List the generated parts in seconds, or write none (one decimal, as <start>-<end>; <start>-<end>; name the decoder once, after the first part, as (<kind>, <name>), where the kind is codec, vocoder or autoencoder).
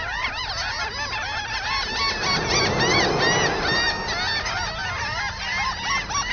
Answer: none